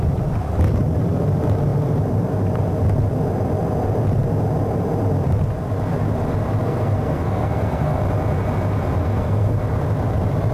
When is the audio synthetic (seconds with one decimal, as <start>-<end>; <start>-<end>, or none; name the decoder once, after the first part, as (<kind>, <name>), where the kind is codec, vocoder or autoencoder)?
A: 6.6-8.0 (codec, SNAC); 9.0-9.6